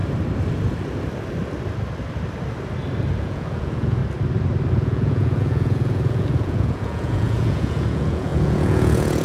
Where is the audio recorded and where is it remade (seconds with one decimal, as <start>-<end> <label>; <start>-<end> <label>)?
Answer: 0.0-3.2 recorded; 3.2-4.0 remade; 4.0-4.7 recorded; 4.7-9.2 remade